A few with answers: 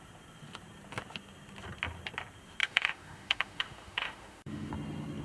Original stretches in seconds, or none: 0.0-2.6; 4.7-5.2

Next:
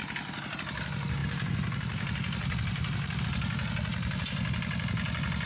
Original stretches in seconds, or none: 0.0-5.5

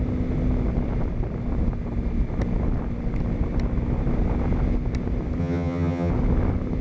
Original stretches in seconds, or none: 0.0-5.4; 6.1-6.8